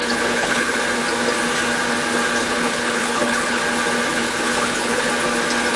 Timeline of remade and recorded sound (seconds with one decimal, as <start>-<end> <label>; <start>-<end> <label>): 0.0-0.8 remade; 0.8-2.4 recorded; 2.4-3.6 remade; 3.6-4.1 recorded; 4.1-5.1 remade; 5.1-5.8 recorded